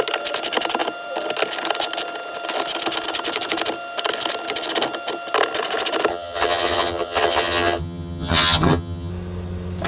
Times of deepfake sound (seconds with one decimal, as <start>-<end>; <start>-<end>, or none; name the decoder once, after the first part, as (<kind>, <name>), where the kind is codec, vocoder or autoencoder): 6.1-9.1 (vocoder, HiFi-GAN)